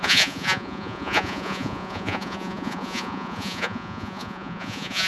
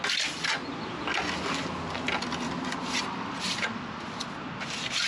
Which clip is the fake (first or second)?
first